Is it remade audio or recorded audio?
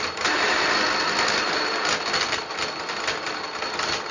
recorded